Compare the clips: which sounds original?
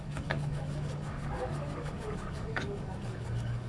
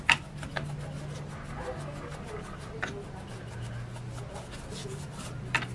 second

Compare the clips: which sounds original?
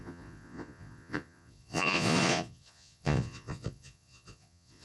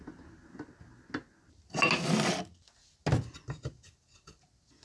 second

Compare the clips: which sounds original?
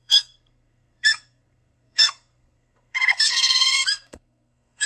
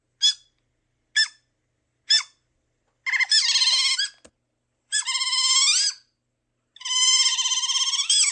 second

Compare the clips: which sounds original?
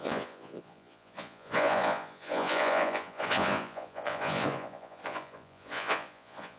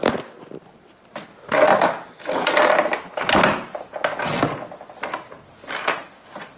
second